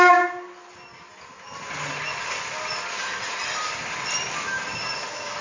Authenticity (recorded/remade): recorded